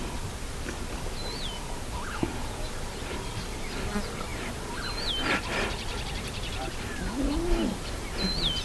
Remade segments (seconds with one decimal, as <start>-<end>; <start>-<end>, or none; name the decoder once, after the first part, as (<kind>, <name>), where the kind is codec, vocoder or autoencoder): 5.9-6.6 (vocoder, BigVGAN v2)